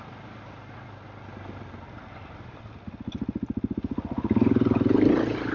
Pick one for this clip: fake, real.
real